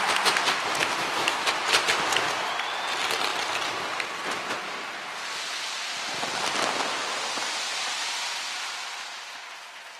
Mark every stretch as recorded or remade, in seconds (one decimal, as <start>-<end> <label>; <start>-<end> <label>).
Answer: 0.0-0.8 recorded; 0.8-1.5 remade; 1.5-10.0 recorded